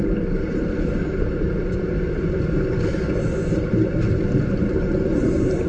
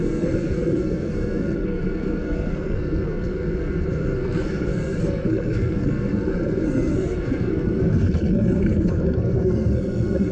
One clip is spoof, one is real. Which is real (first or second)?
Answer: first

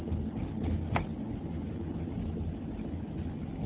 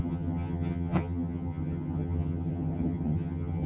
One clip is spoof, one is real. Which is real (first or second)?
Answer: first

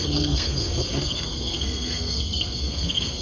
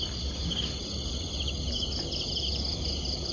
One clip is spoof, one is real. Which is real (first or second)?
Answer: second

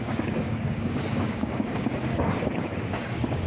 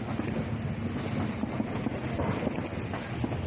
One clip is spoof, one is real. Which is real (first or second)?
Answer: second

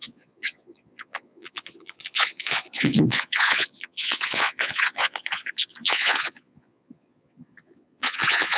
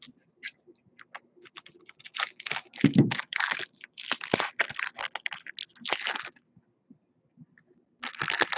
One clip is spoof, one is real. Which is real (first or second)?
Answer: second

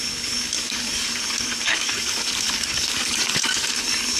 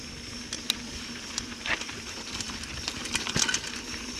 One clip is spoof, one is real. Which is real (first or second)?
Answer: second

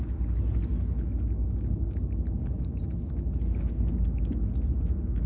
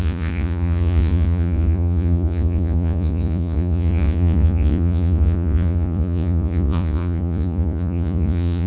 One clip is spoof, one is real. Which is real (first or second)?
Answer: first